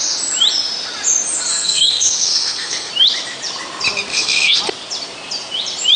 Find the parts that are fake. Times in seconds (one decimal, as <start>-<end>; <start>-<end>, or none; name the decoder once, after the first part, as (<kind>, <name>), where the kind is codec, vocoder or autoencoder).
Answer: 1.5-2.9 (codec, SNAC); 4.1-4.6